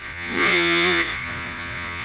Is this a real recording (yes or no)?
no